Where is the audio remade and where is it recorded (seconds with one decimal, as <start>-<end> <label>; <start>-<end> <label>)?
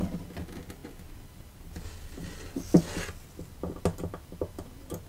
0.0-5.1 recorded